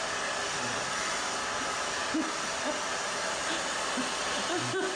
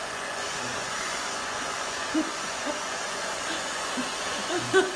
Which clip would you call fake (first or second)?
second